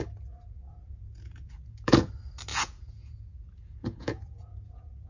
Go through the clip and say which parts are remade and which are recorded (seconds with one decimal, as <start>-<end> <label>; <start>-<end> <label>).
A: 0.0-0.7 recorded; 0.7-2.1 remade; 2.1-2.5 recorded; 2.5-5.1 remade